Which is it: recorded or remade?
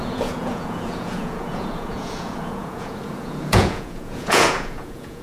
remade